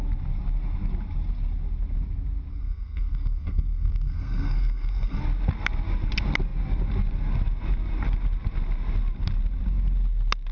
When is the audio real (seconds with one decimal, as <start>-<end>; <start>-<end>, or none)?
0.0-2.5; 5.2-10.5